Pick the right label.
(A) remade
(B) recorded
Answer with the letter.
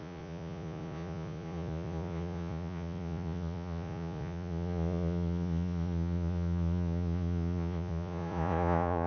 A